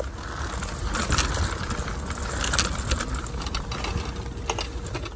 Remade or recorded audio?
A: recorded